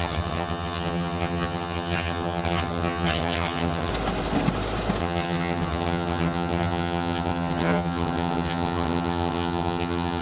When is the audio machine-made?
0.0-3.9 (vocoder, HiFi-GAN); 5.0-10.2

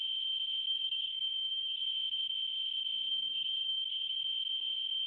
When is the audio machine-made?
0.7-1.8 (codec, SNAC); 3.1-4.2